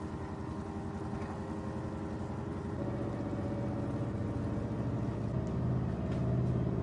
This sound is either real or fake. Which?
real